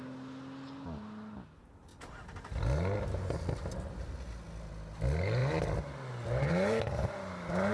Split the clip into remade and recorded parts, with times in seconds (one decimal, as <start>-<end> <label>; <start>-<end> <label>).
0.0-7.7 recorded